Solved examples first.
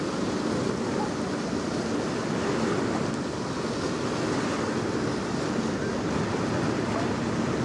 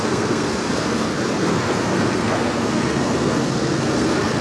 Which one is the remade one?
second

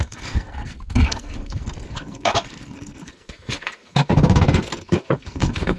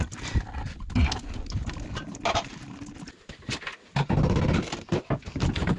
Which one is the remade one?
first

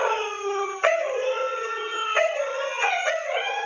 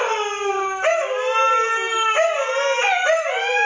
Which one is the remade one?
first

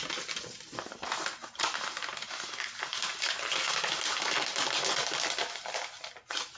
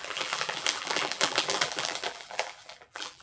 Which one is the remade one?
second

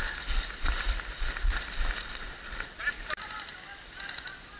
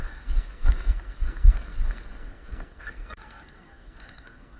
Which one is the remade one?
second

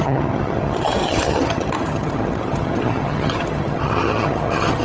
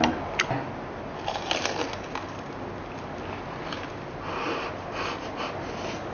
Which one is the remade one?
first